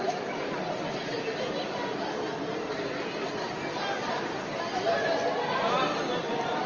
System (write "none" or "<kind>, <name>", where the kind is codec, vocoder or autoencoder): none